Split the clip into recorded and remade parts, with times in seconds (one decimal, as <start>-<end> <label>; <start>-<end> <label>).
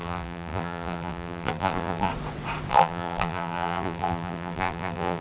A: 0.0-2.1 remade; 2.1-2.7 recorded; 2.7-5.2 remade